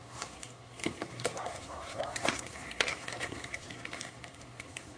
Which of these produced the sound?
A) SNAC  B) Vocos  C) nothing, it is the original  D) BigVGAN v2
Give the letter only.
A